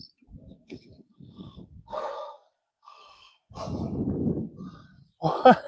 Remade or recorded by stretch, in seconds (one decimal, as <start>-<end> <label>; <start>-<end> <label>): 0.0-0.4 recorded; 0.4-3.5 remade; 3.5-5.7 recorded